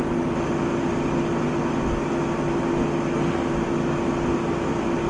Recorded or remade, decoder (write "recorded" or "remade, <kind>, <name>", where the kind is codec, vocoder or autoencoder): recorded